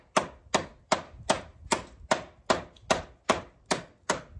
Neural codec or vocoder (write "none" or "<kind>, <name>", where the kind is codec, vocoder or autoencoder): none